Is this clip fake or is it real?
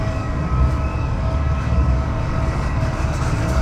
fake